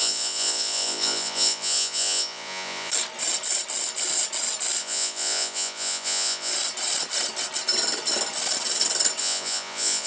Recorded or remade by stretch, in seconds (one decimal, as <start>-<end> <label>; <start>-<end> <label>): 0.0-2.9 remade; 2.9-4.8 recorded; 4.8-6.5 remade; 6.5-9.2 recorded; 9.2-10.1 remade